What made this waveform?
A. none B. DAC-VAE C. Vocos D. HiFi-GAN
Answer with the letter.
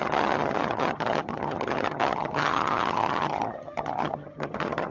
D